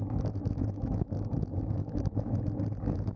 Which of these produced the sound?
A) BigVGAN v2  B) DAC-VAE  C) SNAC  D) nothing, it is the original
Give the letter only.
B